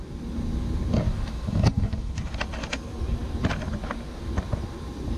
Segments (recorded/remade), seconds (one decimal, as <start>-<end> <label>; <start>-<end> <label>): 0.0-1.1 recorded; 1.1-2.2 remade; 2.2-5.2 recorded